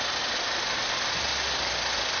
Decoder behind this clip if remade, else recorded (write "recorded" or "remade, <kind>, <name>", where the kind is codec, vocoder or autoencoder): recorded